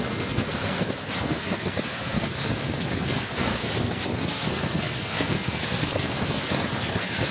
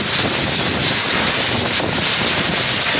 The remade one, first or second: first